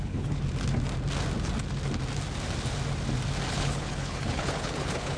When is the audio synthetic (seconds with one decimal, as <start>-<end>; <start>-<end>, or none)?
0.0-0.4; 3.5-5.2